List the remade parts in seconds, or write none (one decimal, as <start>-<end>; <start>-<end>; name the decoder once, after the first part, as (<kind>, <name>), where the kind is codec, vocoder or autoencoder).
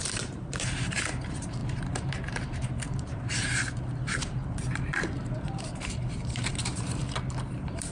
0.0-7.0 (vocoder, BigVGAN v2); 7.5-7.9